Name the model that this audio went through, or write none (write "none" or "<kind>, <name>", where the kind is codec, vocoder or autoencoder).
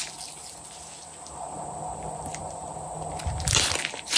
none